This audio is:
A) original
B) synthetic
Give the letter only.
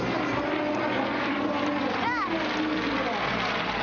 A